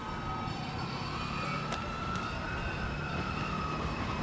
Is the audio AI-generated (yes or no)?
no